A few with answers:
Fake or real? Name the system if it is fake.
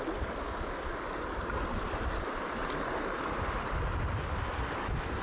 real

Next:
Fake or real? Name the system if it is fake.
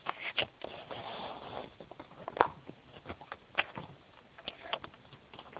real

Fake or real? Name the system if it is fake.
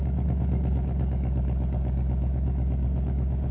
fake, codec, DAC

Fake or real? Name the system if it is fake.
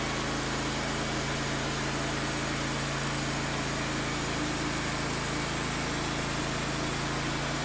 real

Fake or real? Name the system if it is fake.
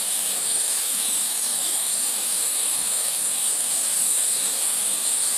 fake, codec, DAC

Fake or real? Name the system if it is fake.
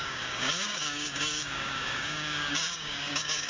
fake, codec, DAC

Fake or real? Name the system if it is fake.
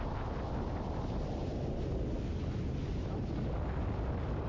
real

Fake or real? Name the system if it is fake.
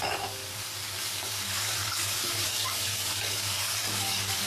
fake, codec, DAC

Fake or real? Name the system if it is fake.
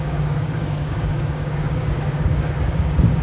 fake, codec, DAC